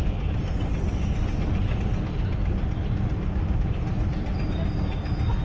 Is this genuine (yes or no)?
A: yes